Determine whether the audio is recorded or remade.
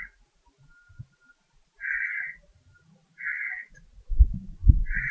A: recorded